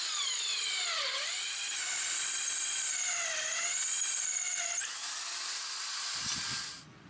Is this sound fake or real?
real